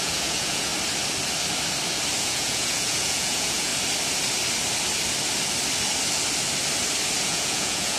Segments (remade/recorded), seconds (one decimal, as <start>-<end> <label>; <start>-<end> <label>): 0.0-0.7 remade; 0.7-2.2 recorded; 2.2-3.7 remade; 3.7-7.2 recorded; 7.2-8.0 remade